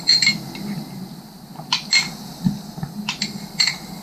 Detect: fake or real real